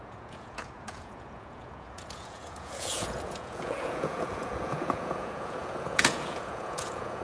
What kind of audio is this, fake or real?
fake